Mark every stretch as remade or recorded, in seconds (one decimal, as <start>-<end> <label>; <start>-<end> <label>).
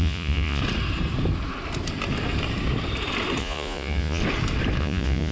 0.0-0.6 remade; 0.6-3.4 recorded; 3.4-4.2 remade; 4.2-4.8 recorded; 4.8-5.3 remade